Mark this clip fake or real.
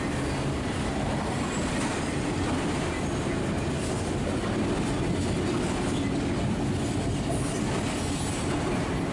real